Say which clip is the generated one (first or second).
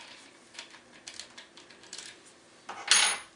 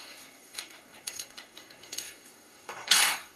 second